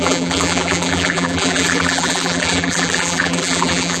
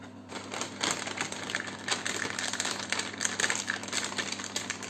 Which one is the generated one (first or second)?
first